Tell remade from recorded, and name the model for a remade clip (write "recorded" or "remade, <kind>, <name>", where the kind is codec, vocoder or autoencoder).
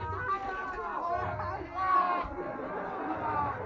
recorded